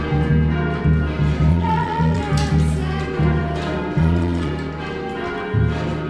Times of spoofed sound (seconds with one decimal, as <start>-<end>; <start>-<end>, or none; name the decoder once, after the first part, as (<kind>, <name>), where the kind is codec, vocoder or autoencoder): 1.5-2.2 (vocoder, Vocos); 4.0-4.5